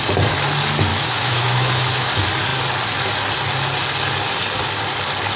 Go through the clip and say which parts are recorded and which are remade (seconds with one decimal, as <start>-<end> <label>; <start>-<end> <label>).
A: 0.0-0.9 recorded; 0.9-2.1 remade; 2.1-5.4 recorded